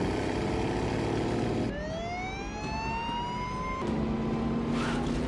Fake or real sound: real